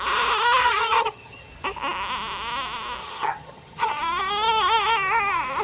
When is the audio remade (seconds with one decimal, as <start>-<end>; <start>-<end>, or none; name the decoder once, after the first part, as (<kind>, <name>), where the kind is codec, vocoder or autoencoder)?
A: 0.6-1.5 (vocoder, HiFi-GAN); 3.0-4.0